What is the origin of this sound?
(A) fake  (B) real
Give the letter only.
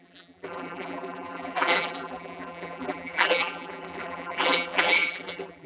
A